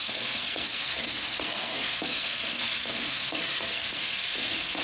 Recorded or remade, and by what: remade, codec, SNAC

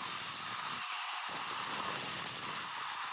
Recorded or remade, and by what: recorded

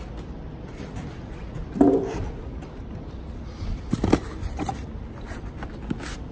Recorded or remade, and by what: recorded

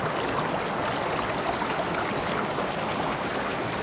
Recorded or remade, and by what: recorded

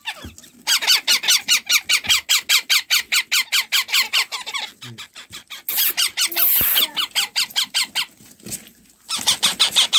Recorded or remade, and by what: recorded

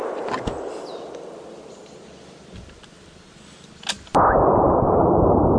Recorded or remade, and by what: recorded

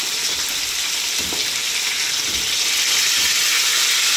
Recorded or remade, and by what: recorded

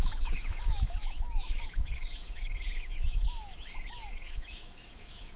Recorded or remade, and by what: remade, autoencoder, DAC-VAE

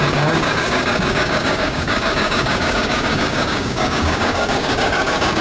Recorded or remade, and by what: remade, codec, DAC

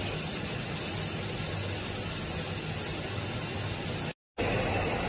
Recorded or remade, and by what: recorded